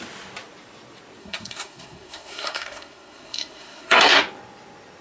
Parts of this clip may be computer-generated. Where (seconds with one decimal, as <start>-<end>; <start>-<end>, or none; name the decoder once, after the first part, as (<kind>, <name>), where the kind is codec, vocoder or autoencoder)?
1.2-4.2 (codec, SNAC)